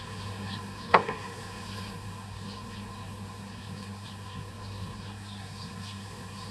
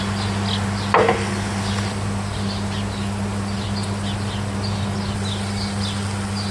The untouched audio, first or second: second